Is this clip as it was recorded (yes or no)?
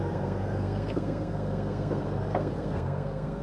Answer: no